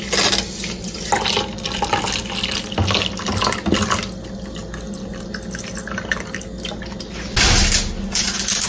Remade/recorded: recorded